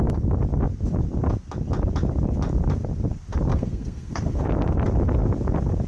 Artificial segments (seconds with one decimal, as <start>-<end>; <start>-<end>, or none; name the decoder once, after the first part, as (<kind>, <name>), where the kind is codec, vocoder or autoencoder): 3.5-4.4 (codec, SNAC)